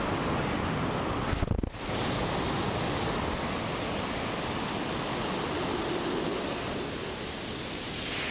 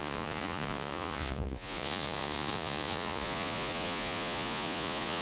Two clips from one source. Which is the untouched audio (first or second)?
first